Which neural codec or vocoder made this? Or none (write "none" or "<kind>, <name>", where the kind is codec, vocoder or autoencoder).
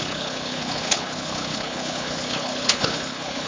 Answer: codec, HILCodec